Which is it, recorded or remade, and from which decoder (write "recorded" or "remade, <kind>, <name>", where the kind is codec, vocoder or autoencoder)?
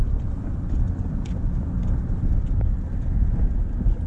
recorded